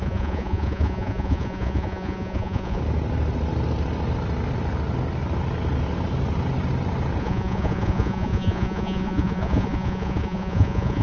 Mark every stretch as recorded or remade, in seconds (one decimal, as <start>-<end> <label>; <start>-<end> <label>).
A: 0.0-2.8 remade; 2.8-7.2 recorded; 7.2-11.0 remade